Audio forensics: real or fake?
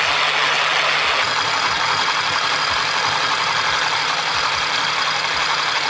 real